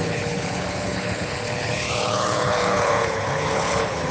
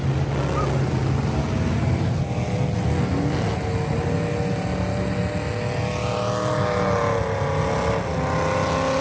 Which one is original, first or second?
second